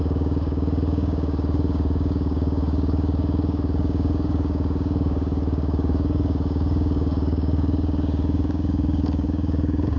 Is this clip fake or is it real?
fake